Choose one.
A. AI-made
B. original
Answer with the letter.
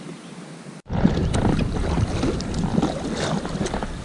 B